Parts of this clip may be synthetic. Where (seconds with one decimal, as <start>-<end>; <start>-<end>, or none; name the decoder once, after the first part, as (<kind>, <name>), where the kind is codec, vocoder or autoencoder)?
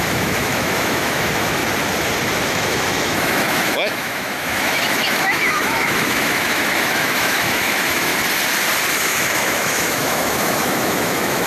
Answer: 0.0-1.6 (autoencoder, DAC-VAE); 2.5-8.1; 8.9-11.5